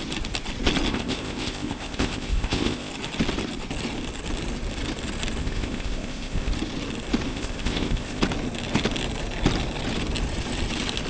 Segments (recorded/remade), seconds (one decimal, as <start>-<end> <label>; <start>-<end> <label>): 0.0-0.9 recorded; 0.9-2.9 remade; 2.9-5.4 recorded; 5.4-6.5 remade; 6.5-7.3 recorded; 7.3-8.2 remade; 8.2-11.1 recorded